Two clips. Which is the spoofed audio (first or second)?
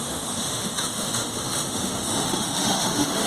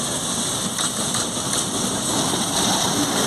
first